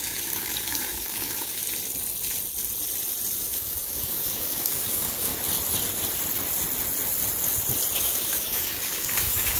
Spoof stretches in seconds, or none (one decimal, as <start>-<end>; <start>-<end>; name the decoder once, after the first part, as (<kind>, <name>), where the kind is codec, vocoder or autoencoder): 0.0-1.6 (codec, DAC); 3.4-5.3; 8.0-9.6